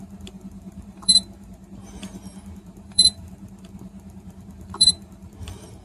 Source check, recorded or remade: remade